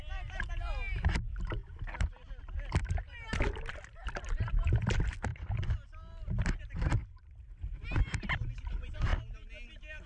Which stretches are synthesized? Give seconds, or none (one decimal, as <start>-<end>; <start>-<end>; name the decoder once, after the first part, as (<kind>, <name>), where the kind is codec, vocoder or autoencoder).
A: 0.0-1.6 (vocoder, BigVGAN v2); 2.4-5.3; 6.6-9.1